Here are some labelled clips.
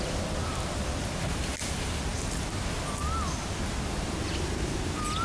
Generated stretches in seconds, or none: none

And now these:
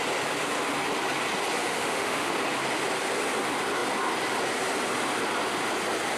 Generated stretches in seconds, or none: 1.6-2.3 (autoencoder, DAC-VAE)

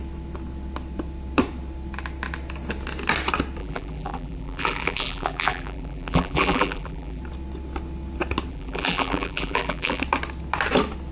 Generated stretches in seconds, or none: 3.6-7.2 (vocoder, BigVGAN v2); 8.5-10.0

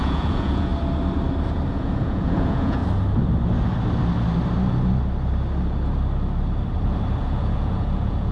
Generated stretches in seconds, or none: 0.0-0.7 (vocoder, Vocos); 1.7-2.8; 7.2-8.3

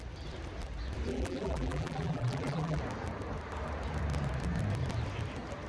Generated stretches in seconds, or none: 1.1-2.8 (vocoder, BigVGAN v2)

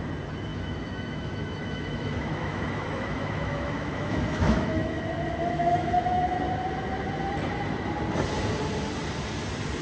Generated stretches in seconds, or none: 0.5-5.0 (autoencoder, DAC-VAE); 5.4-6.4

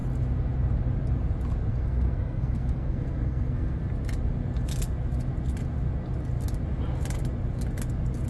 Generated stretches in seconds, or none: 1.7-3.8 (codec, SNAC)

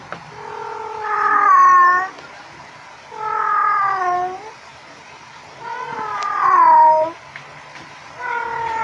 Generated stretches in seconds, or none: none